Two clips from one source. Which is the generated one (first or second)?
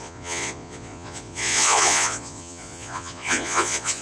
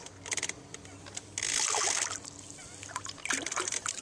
first